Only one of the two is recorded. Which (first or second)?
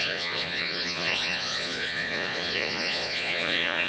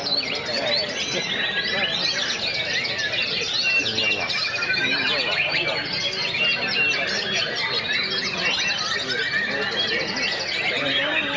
second